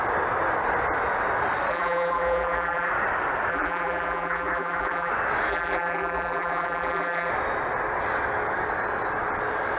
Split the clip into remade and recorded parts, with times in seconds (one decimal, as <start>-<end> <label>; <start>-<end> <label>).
0.0-1.7 recorded; 1.7-2.9 remade; 2.9-3.5 recorded; 3.5-5.1 remade; 5.1-5.5 recorded; 5.5-7.3 remade; 7.3-9.8 recorded